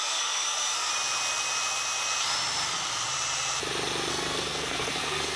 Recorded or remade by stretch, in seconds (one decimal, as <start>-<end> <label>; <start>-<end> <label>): 0.0-0.9 remade; 0.9-4.1 recorded; 4.1-5.4 remade